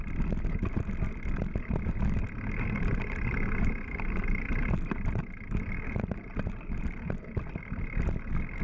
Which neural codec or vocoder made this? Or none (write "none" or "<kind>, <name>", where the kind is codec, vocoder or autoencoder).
none